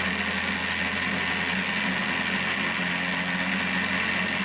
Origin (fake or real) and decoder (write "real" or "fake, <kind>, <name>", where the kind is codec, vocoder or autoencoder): real